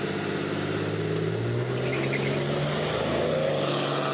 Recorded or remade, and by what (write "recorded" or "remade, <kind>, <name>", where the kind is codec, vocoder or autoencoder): recorded